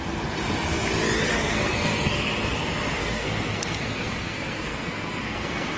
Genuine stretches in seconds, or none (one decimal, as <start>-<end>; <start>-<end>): 0.0-1.3; 2.3-3.0